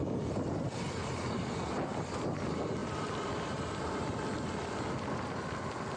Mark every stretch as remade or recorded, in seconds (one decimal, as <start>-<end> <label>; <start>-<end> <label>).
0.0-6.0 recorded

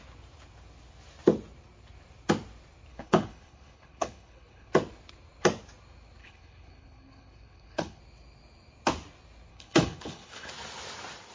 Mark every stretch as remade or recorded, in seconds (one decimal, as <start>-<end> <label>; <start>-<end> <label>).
0.0-2.9 recorded; 2.9-4.7 remade; 4.7-6.2 recorded; 6.2-8.0 remade; 8.0-9.5 recorded; 9.5-10.5 remade; 10.5-11.3 recorded

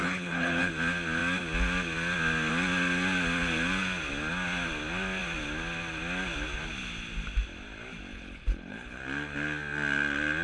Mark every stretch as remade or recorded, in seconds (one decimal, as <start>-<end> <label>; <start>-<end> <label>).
0.0-0.7 remade; 0.7-8.1 recorded; 8.1-9.0 remade; 9.0-10.4 recorded